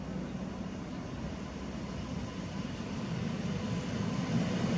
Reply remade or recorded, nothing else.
recorded